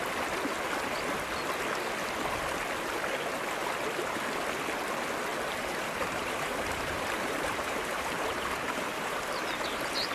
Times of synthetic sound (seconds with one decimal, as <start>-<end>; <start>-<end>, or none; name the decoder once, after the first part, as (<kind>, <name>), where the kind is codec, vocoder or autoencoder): 5.3-9.3 (vocoder, BigVGAN v2)